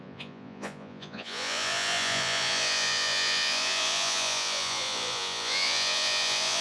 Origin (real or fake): fake